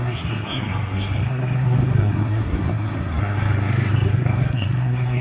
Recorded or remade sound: remade